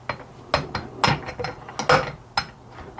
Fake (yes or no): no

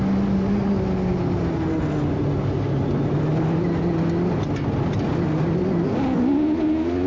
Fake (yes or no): no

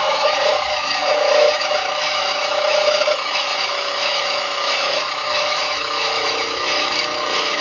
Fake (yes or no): yes